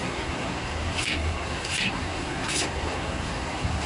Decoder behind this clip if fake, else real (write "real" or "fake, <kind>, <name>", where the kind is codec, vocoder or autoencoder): fake, codec, SNAC